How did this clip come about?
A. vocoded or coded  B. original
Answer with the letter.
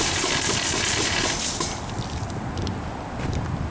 B